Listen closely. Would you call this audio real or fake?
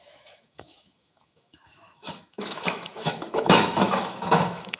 fake